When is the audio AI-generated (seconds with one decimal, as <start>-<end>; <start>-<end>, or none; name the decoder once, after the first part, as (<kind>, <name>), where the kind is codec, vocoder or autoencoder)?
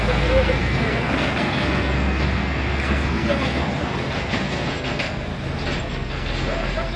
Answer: 0.0-5.3 (codec, SNAC); 5.8-7.0